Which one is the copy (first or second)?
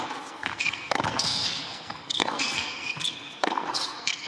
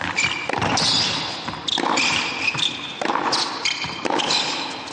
first